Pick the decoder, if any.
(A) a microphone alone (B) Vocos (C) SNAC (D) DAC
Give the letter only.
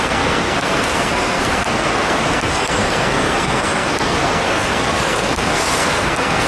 C